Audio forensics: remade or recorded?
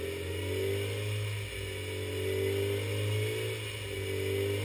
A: recorded